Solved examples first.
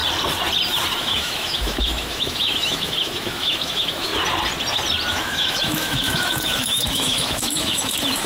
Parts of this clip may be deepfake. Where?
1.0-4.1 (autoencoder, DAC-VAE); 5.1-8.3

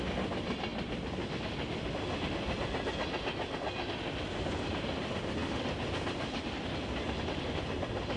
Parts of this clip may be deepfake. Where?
none

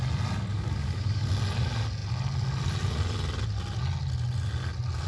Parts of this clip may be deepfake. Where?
0.5-1.3 (codec, DAC)

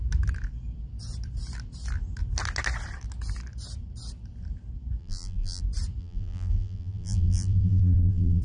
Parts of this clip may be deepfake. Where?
5.0-5.6 (vocoder, BigVGAN v2); 6.0-8.4

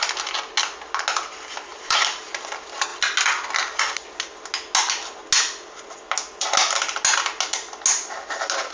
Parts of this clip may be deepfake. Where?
1.7-2.4 (vocoder, BigVGAN v2)

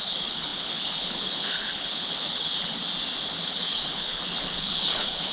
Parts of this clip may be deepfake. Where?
0.0-2.8 (codec, HILCodec); 3.4-5.3